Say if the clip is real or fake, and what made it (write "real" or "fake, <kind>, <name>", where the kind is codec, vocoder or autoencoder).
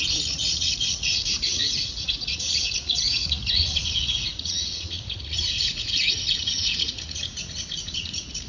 fake, vocoder, Vocos